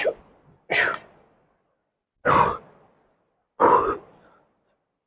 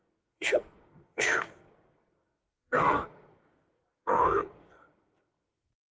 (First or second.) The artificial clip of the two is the second